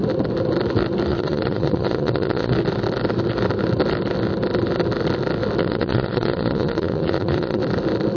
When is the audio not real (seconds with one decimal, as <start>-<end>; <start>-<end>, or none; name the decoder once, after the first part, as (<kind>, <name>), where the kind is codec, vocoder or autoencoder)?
1.1-2.5 (vocoder, Vocos); 5.6-7.6